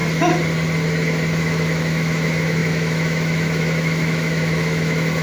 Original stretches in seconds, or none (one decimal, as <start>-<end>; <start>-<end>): 0.0-1.4

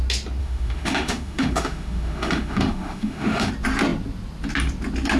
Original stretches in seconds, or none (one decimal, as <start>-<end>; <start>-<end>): 0.0-0.4; 3.5-5.2

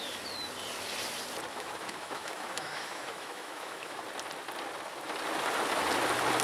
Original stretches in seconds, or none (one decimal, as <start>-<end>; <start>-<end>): 0.0-1.5; 4.0-6.4

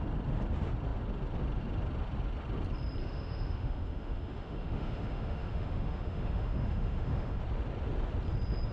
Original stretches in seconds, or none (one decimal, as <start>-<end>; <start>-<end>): 0.0-3.0; 7.4-8.7

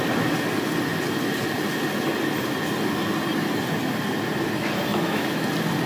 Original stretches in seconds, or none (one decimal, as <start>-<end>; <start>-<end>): 0.0-4.9; 5.4-5.9

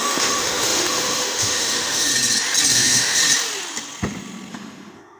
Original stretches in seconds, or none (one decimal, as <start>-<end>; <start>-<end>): 2.1-2.7; 3.2-4.5